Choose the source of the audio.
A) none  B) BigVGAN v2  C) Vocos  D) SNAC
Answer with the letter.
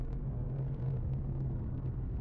D